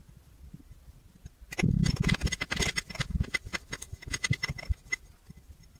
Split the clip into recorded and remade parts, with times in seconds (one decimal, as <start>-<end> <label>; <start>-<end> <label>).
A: 0.0-5.8 recorded